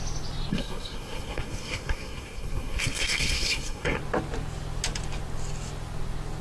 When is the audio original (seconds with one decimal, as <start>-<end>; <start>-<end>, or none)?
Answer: 0.0-0.5; 4.0-6.4